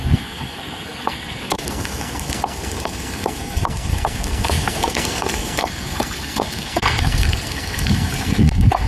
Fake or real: fake